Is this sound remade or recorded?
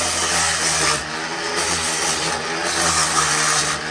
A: recorded